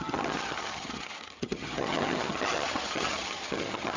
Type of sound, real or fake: fake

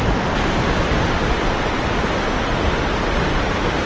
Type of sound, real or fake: real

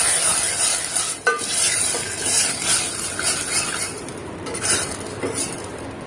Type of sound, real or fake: real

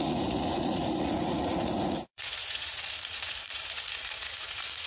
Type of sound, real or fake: fake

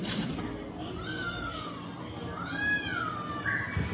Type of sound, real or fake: real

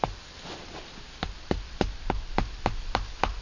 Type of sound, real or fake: real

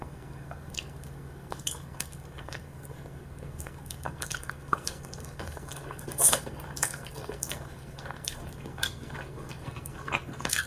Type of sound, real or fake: fake